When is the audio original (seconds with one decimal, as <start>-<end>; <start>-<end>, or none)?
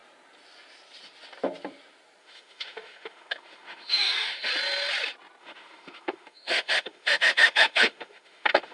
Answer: 0.0-2.2; 4.5-5.4